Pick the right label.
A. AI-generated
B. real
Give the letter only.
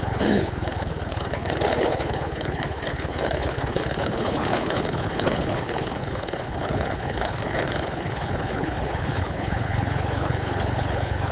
A